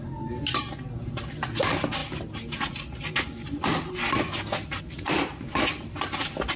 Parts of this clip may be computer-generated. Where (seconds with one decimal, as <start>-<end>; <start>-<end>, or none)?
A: none